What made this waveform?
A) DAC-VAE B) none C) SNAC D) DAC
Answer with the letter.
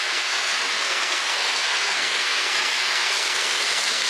C